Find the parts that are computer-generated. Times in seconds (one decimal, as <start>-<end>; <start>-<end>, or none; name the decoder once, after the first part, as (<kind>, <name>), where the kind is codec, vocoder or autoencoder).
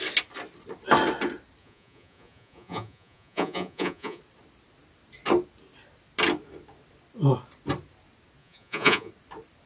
1.6-4.2 (vocoder, Vocos); 8.4-9.1